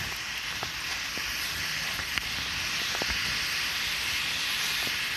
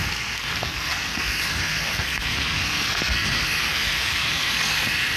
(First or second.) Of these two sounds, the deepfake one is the second